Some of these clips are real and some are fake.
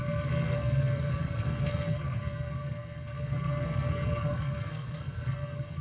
fake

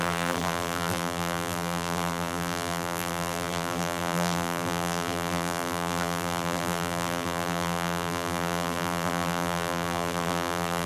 fake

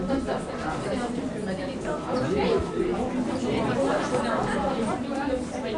real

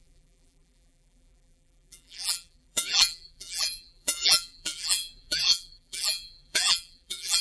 fake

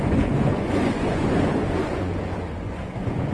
fake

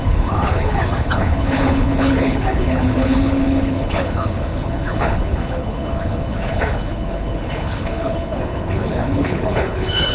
fake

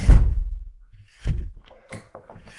fake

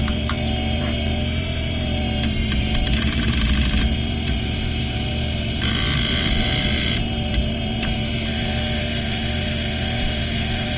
fake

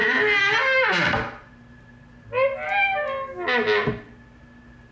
real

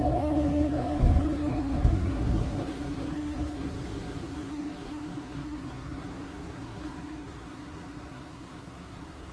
fake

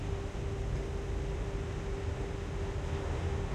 real